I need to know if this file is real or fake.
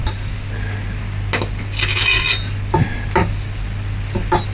real